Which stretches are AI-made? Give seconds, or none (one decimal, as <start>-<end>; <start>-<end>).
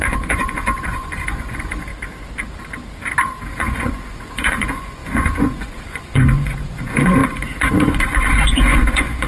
0.0-1.9; 3.5-9.3